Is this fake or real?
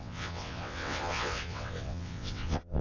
fake